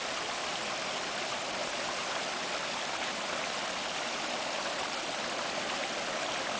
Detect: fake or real fake